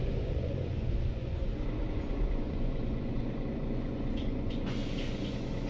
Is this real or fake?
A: fake